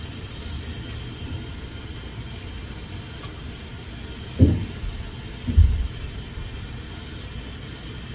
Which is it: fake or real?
real